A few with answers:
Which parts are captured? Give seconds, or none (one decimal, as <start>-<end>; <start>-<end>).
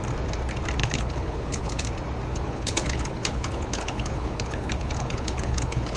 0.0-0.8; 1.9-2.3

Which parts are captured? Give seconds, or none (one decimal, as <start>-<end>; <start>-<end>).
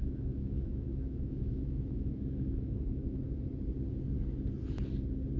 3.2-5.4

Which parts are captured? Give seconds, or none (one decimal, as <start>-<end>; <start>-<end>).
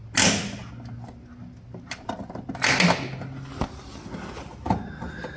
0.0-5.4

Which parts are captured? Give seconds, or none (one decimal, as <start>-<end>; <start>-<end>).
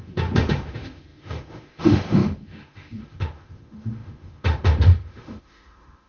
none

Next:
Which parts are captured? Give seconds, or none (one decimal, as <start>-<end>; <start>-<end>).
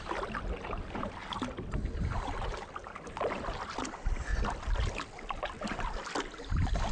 0.0-6.9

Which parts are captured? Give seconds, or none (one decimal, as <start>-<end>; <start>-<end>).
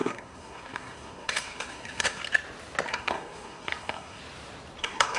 2.2-2.9; 4.2-4.8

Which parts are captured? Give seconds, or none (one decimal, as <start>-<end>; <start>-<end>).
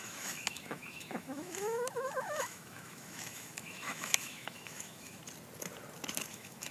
5.2-6.3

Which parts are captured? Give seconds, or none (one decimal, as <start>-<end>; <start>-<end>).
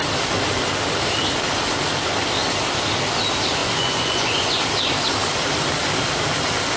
0.0-3.6; 4.6-6.8